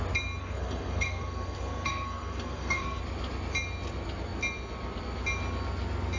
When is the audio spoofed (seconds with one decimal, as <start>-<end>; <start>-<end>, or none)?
0.4-3.0